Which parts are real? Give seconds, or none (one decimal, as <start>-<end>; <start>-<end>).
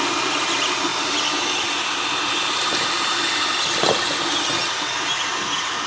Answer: 0.0-5.9